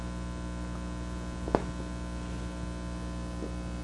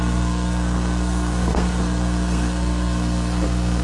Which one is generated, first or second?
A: second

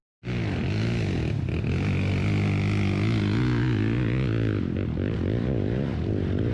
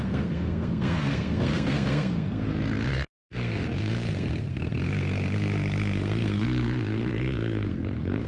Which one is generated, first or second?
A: second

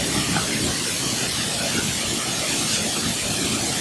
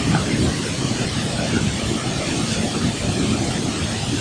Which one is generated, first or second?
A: second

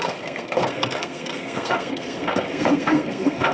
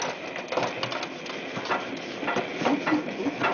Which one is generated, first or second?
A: first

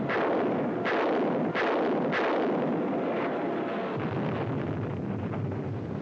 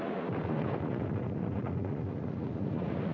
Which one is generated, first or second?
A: second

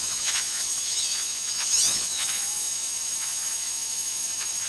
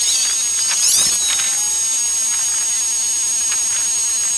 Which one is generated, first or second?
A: first